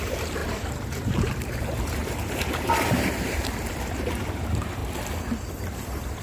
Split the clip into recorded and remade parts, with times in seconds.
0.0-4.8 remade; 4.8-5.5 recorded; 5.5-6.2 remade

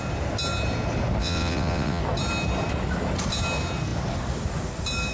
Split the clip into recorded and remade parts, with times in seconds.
0.0-1.2 recorded; 1.2-2.0 remade; 2.0-5.1 recorded

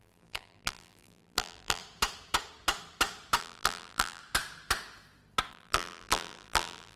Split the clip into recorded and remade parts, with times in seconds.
0.0-1.8 remade; 1.8-3.4 recorded; 3.4-4.2 remade; 4.2-5.5 recorded; 5.5-7.0 remade

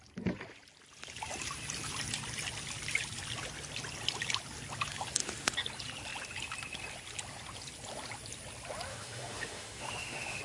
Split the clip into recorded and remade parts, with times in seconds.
0.0-8.9 recorded; 8.9-10.4 remade

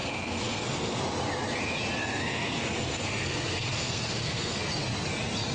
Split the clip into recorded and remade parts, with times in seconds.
0.0-1.0 remade; 1.0-2.0 recorded; 2.0-4.6 remade; 4.6-5.5 recorded

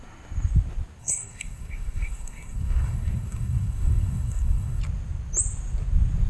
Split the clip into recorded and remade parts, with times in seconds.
0.0-1.0 recorded; 1.0-4.8 remade; 4.8-6.3 recorded